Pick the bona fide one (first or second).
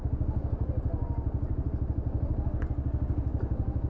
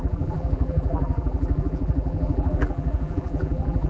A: first